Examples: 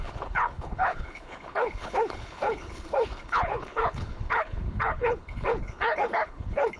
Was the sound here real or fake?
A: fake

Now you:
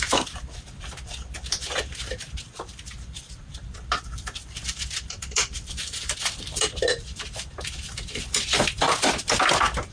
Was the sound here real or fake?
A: fake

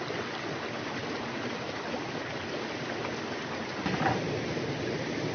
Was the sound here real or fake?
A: real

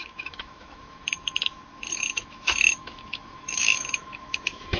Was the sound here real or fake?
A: fake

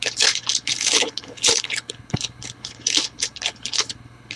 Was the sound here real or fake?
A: fake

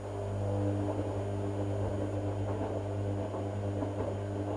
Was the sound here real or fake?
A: real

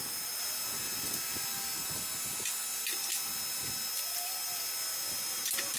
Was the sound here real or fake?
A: real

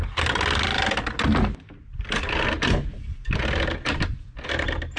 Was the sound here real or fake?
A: real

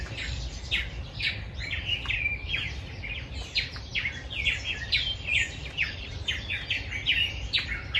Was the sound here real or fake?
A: real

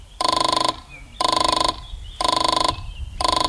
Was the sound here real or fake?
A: fake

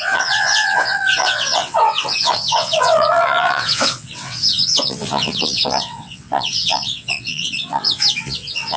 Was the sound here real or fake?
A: fake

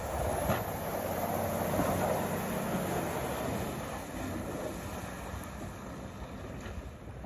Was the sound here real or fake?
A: real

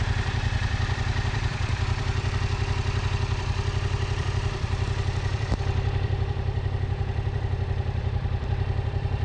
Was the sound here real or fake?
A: fake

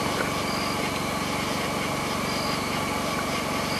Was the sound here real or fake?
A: real